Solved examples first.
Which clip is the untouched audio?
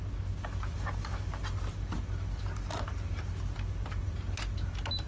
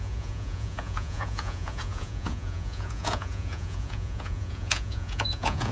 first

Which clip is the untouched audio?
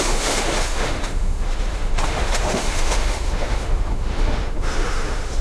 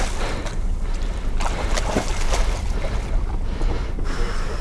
second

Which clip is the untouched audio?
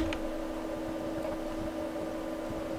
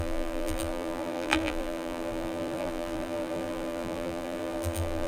first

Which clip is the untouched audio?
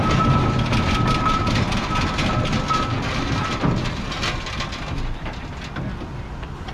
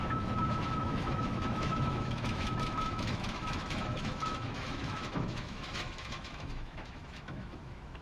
first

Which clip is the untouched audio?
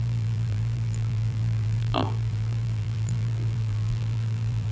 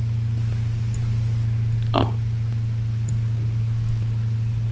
second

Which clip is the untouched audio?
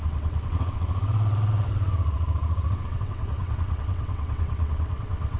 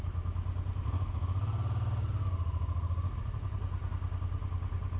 second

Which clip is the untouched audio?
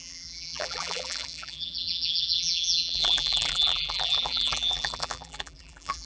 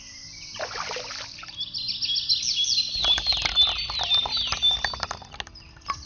second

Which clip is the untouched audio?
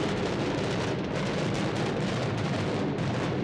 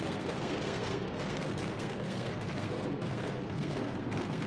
first